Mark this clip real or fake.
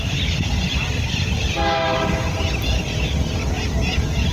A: real